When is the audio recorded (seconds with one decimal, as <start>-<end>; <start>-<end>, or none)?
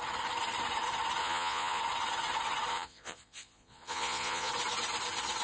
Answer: 0.0-1.2; 1.8-2.7; 4.5-5.4